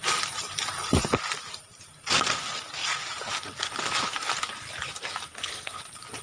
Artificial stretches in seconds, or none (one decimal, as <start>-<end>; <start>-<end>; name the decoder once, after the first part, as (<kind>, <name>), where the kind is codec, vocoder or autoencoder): 5.3-5.8 (codec, SNAC)

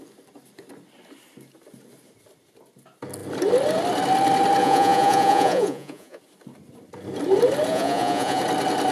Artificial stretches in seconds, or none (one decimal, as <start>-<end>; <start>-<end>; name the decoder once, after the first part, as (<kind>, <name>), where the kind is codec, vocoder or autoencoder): 4.6-6.2 (vocoder, Vocos); 7.7-8.4